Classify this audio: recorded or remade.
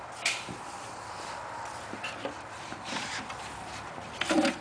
remade